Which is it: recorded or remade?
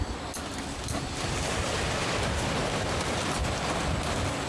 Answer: recorded